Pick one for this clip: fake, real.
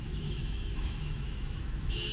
fake